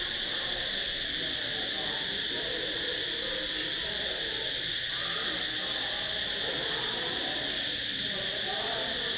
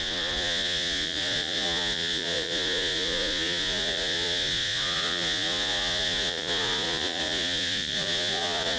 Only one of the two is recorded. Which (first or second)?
first